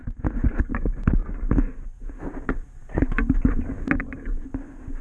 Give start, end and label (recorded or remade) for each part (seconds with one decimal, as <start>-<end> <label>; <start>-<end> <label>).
0.0-5.0 recorded